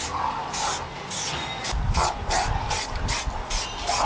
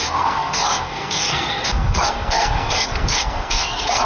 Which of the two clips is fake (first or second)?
second